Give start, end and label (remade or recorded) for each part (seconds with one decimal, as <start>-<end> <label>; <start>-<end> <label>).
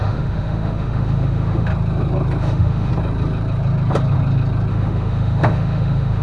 0.0-1.7 remade; 1.7-2.4 recorded; 2.4-2.9 remade; 2.9-4.7 recorded; 4.7-6.2 remade